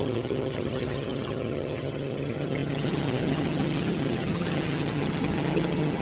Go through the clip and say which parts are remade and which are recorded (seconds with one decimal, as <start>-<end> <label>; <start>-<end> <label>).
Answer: 0.0-6.0 remade